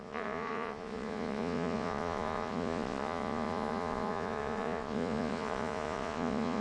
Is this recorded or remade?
remade